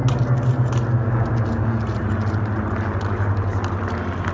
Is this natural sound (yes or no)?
yes